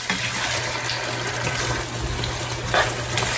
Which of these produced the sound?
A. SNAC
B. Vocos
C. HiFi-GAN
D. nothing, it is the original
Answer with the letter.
D